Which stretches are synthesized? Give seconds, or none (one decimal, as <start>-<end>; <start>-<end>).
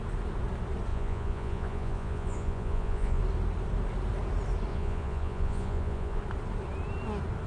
0.9-3.2; 4.7-6.2